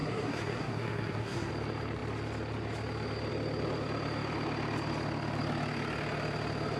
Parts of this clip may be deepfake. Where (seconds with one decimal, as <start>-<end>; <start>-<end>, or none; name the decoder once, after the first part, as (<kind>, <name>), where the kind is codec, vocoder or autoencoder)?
0.0-1.5 (codec, SNAC)